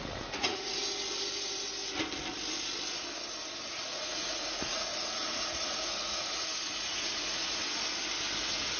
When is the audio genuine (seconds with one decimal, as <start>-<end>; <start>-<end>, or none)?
0.8-3.7; 7.6-8.4